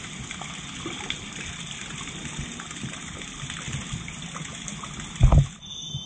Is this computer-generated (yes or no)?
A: no